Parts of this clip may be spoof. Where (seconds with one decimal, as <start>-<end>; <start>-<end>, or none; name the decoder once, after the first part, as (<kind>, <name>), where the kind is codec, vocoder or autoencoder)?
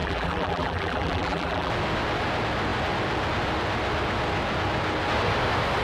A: 0.0-1.7 (vocoder, BigVGAN v2)